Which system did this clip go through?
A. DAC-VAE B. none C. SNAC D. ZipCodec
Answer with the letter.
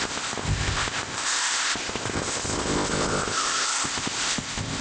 D